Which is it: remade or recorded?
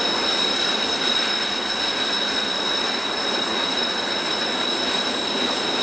recorded